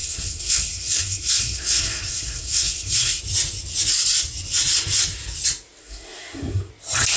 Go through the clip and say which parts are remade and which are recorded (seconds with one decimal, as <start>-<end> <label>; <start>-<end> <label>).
0.0-3.2 remade; 3.2-5.8 recorded; 5.8-6.7 remade; 6.7-7.2 recorded